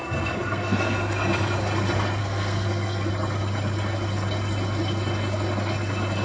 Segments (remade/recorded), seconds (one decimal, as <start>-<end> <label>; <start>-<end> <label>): 0.0-0.8 remade; 0.8-2.2 recorded; 2.2-3.1 remade; 3.1-6.2 recorded